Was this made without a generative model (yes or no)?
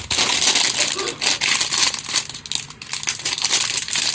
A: yes